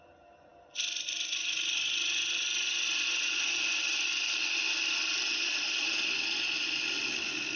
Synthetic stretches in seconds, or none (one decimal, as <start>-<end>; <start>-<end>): none